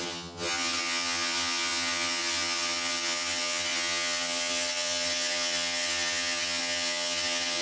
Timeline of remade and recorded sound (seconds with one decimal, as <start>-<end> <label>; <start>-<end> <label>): 0.0-7.6 remade